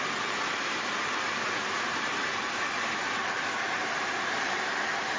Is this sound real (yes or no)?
no